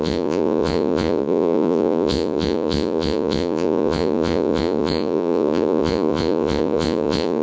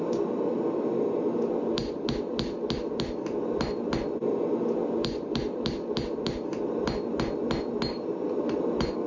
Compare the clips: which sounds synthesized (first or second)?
first